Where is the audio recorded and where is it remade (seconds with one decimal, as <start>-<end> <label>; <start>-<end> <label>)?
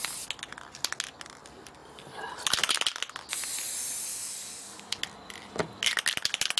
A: 0.0-4.1 recorded; 4.1-5.0 remade; 5.0-6.6 recorded